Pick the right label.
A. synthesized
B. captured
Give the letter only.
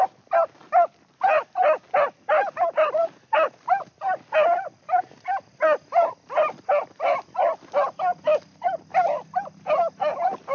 B